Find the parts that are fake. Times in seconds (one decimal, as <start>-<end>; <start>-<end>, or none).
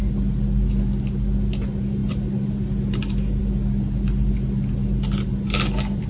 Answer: none